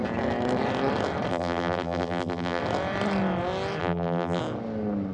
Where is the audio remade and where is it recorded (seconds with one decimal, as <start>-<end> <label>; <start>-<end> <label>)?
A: 0.0-1.3 recorded; 1.3-2.6 remade; 2.6-3.8 recorded; 3.8-4.4 remade; 4.4-5.1 recorded